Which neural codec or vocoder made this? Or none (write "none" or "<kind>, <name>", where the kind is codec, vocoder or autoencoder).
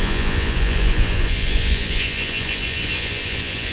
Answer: vocoder, Vocos